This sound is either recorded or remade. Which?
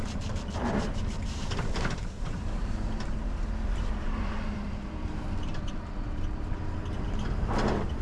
remade